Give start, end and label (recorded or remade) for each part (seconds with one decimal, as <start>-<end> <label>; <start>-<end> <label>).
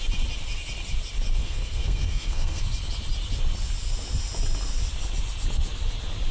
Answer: 0.0-1.4 recorded; 1.4-2.6 remade; 2.6-6.3 recorded